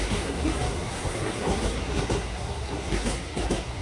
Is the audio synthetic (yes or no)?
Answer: yes